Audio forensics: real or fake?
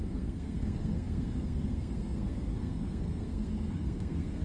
fake